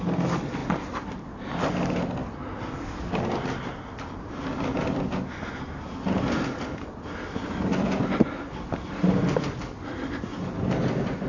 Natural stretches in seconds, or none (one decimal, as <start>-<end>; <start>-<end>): 0.0-11.3